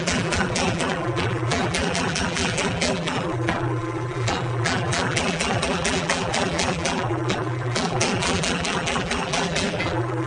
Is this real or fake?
fake